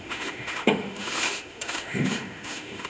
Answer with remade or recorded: remade